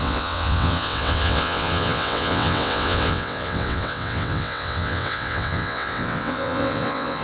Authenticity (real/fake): fake